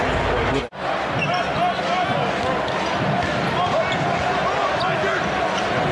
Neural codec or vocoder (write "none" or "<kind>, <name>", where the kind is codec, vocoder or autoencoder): none